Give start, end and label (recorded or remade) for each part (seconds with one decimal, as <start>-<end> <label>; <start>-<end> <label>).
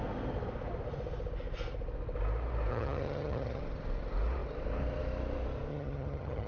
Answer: 0.0-2.7 recorded; 2.7-3.6 remade; 3.6-5.7 recorded; 5.7-6.5 remade